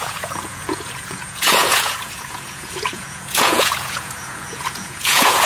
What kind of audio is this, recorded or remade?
remade